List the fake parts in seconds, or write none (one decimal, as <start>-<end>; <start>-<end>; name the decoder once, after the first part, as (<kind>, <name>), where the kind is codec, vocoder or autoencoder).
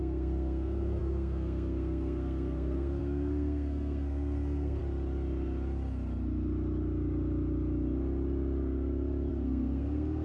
0.0-4.8 (codec, SNAC); 9.3-10.2